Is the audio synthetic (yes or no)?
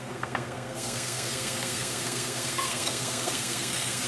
yes